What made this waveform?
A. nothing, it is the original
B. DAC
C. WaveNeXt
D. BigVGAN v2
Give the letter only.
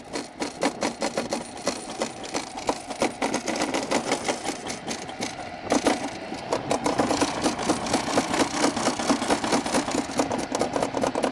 A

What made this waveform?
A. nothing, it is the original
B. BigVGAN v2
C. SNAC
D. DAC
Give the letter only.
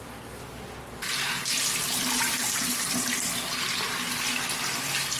A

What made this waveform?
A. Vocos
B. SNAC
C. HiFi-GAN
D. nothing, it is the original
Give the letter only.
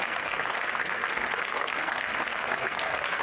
B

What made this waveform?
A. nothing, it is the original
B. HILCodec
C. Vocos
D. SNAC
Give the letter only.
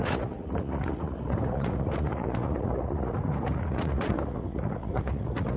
C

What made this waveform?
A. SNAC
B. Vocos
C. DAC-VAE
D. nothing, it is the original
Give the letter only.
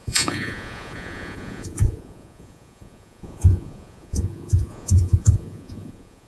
B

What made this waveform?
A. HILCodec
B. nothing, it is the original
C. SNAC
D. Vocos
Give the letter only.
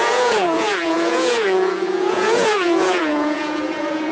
D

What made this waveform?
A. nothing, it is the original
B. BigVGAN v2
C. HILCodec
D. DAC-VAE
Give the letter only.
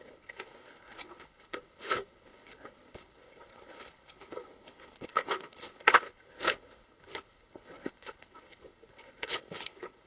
C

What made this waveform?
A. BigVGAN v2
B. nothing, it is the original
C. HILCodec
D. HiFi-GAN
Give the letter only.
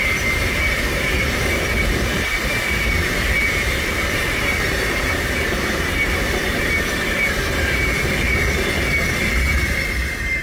A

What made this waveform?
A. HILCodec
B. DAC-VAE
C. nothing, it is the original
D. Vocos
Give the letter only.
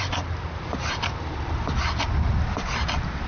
C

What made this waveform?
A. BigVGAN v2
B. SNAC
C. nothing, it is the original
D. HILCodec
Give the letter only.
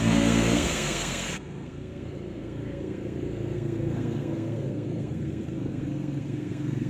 B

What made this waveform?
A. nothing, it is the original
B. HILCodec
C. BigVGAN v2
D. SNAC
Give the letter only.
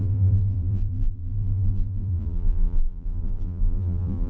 C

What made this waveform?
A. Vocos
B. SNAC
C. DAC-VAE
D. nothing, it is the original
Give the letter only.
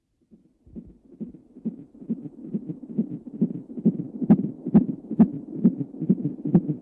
D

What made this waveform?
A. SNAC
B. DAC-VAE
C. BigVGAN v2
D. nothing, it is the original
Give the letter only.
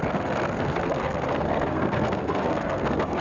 A